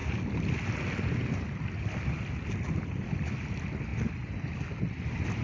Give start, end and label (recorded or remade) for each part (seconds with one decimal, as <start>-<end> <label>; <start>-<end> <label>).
0.0-5.4 recorded